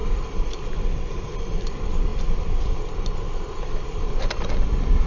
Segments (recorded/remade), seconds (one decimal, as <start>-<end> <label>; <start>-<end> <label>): 0.0-5.1 recorded